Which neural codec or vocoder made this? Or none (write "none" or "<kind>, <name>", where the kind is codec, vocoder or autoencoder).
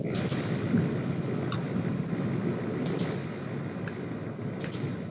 none